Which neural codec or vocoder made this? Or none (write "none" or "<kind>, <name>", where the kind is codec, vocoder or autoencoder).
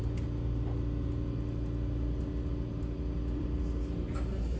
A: none